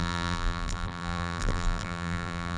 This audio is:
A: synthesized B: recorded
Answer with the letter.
A